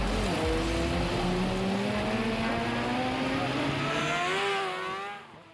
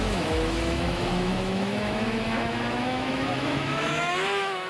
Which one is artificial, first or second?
second